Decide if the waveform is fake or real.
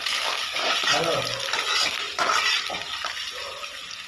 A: real